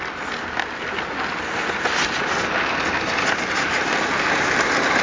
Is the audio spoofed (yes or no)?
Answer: no